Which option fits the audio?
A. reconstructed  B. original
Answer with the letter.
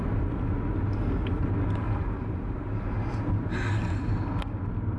B